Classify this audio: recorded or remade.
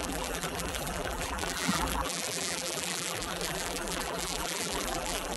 remade